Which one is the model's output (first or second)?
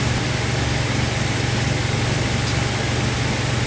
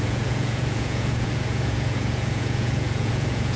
second